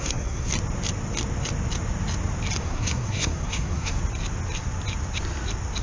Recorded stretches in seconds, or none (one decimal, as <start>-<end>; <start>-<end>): 0.5-2.6; 4.0-5.8